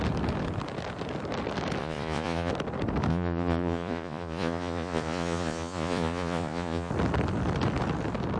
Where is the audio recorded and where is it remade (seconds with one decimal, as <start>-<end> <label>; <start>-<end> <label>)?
0.0-1.8 recorded; 1.8-2.5 remade; 2.5-3.1 recorded; 3.1-6.9 remade; 6.9-8.4 recorded